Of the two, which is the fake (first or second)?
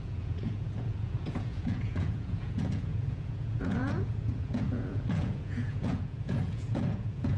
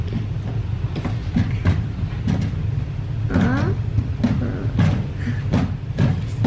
first